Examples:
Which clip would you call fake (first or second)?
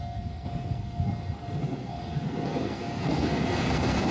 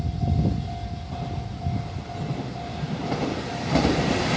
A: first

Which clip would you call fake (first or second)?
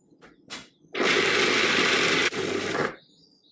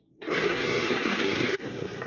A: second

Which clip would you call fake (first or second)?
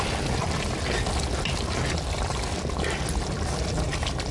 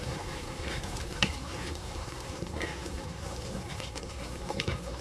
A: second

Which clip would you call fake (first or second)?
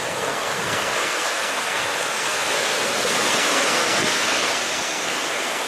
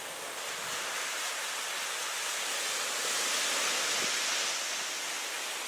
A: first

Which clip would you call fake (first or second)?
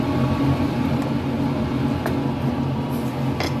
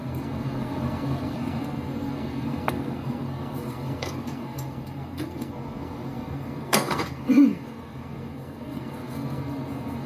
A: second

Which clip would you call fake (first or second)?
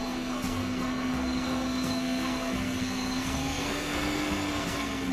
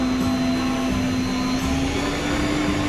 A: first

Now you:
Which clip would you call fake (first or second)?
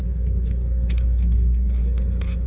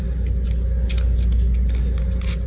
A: first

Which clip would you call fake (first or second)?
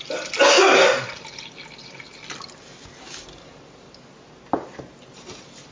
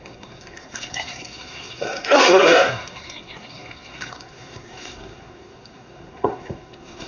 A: second